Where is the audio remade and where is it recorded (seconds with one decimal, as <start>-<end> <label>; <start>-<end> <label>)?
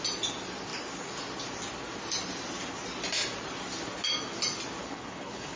0.0-4.8 recorded; 4.8-5.6 remade